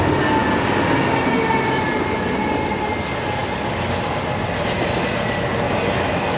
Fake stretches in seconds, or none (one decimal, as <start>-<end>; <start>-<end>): none